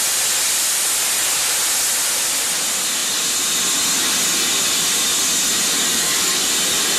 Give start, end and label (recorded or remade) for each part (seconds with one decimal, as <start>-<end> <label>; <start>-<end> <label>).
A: 0.0-5.9 recorded; 5.9-6.5 remade; 6.5-7.0 recorded